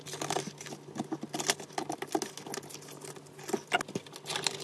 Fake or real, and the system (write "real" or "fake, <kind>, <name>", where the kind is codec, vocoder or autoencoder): real